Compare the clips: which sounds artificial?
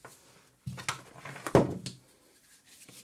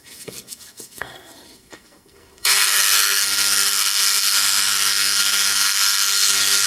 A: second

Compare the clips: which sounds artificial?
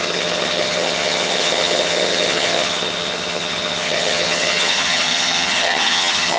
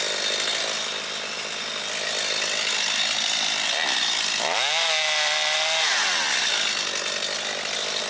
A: first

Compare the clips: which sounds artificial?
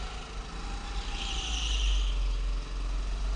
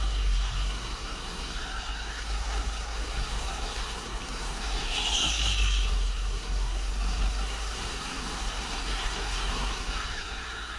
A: second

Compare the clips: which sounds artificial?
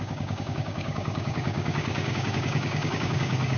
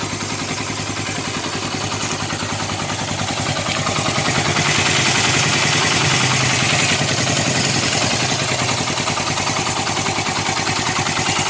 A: first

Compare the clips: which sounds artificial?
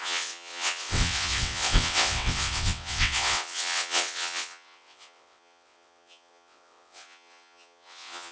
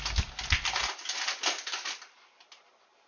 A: first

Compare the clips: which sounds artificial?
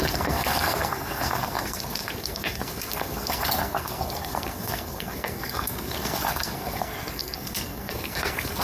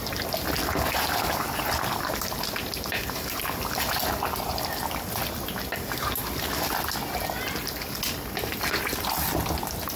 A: first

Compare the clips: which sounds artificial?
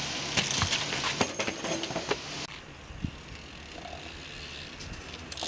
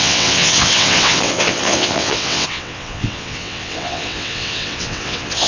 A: second